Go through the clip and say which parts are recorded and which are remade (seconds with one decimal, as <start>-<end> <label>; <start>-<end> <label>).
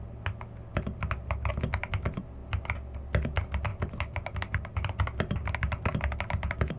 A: 0.0-0.7 recorded; 0.7-1.5 remade; 1.5-3.7 recorded; 3.7-5.4 remade; 5.4-6.8 recorded